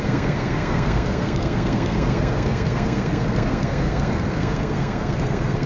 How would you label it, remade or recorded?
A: remade